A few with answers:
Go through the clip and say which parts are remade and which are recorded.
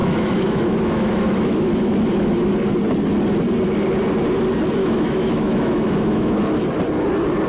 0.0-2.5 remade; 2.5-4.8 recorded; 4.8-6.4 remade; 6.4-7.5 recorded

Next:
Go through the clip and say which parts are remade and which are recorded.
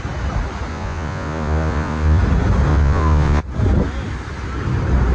0.0-0.7 recorded; 0.7-2.2 remade; 2.2-2.7 recorded; 2.7-3.4 remade; 3.4-5.1 recorded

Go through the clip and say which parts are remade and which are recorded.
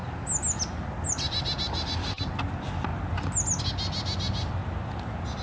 0.0-5.4 recorded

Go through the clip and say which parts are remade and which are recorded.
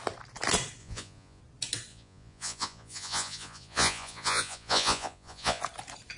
0.0-0.8 recorded; 0.8-1.4 remade; 1.4-1.9 recorded; 1.9-5.6 remade; 5.6-6.2 recorded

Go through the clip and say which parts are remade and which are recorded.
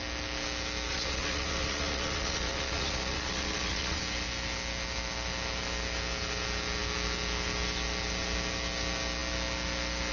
0.0-0.9 recorded; 0.9-4.0 remade; 4.0-10.1 recorded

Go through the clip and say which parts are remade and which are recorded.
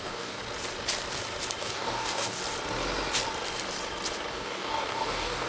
0.0-0.4 remade; 0.4-1.6 recorded; 1.6-2.4 remade; 2.4-4.3 recorded; 4.3-5.5 remade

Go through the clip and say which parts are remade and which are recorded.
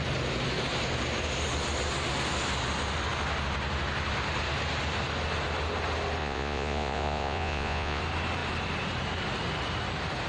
0.0-6.2 recorded; 6.2-8.0 remade; 8.0-10.3 recorded